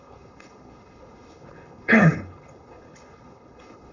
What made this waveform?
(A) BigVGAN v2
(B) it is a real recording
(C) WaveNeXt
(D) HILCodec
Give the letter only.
D